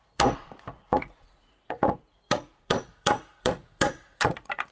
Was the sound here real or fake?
fake